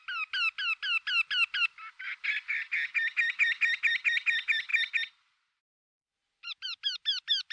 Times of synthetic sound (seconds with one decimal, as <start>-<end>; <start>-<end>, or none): none